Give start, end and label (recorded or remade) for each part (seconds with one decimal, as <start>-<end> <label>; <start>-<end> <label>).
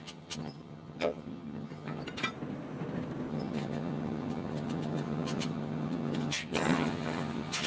0.0-2.0 remade; 2.0-3.3 recorded; 3.3-7.7 remade